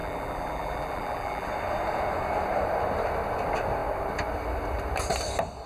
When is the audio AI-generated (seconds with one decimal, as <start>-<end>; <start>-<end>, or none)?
0.0-1.5